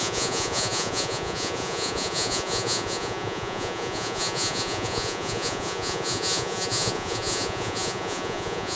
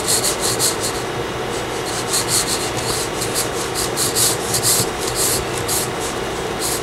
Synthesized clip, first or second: first